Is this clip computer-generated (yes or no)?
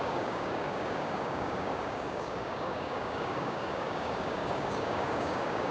yes